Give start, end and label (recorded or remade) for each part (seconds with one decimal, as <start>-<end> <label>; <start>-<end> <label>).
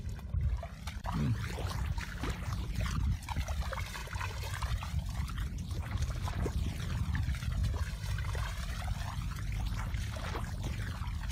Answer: 0.0-4.0 recorded; 4.0-5.3 remade; 5.3-7.6 recorded; 7.6-8.6 remade; 8.6-11.3 recorded